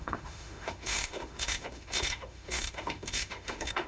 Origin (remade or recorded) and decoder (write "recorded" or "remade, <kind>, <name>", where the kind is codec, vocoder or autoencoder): remade, autoencoder, DAC-VAE